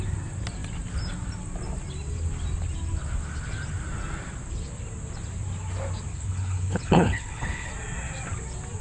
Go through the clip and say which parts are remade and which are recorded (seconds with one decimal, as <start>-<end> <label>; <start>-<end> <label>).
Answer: 0.0-6.1 recorded; 6.1-7.7 remade; 7.7-8.8 recorded